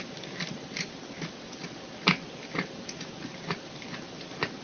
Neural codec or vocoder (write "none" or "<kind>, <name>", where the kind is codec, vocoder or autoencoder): none